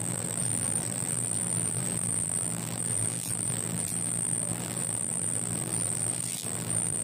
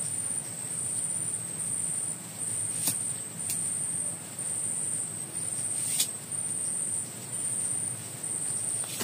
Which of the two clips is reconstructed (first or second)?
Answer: first